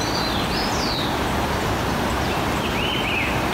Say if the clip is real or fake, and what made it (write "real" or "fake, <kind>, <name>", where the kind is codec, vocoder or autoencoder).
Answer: real